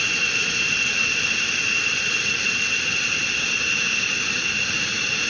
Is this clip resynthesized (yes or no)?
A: no